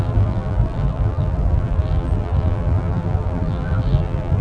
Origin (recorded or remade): remade